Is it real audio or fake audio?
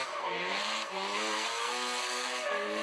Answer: fake